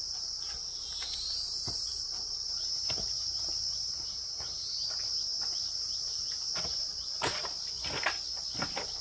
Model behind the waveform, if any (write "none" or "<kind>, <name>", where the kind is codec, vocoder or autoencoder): none